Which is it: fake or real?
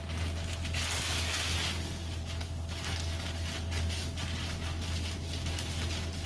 real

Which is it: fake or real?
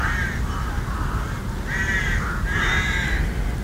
real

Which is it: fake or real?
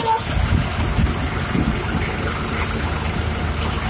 real